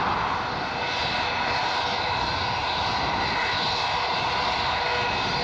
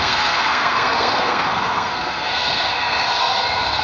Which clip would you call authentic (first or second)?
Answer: first